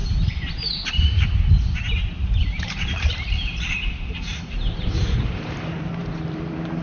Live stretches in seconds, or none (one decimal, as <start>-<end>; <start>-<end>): 1.5-2.4